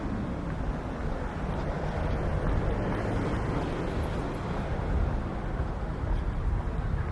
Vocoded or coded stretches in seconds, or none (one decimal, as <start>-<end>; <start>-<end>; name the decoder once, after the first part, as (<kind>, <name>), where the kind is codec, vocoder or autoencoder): none